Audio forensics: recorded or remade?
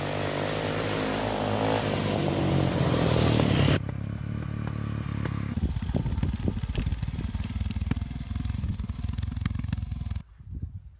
recorded